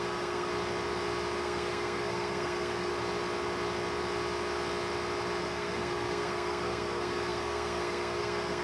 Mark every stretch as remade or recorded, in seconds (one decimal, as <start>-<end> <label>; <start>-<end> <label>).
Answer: 0.0-0.5 remade; 0.5-1.4 recorded; 1.4-2.9 remade; 2.9-5.4 recorded; 5.4-8.6 remade